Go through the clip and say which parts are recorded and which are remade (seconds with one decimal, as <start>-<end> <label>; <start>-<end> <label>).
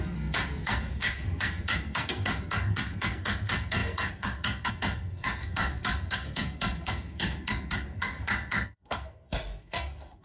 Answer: 0.0-10.2 remade